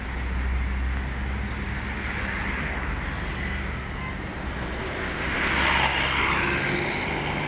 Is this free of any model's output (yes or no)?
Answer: yes